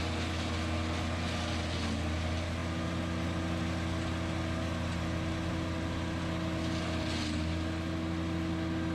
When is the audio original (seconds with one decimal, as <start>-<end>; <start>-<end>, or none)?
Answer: 0.0-8.9